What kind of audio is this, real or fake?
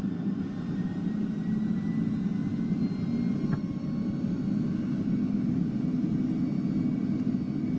real